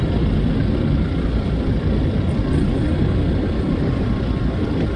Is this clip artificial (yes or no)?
no